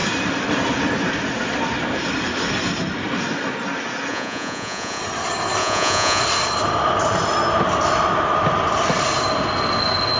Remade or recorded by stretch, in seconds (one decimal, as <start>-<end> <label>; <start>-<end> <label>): 0.0-4.1 recorded; 4.1-5.0 remade; 5.0-5.6 recorded; 5.6-6.2 remade; 6.2-10.2 recorded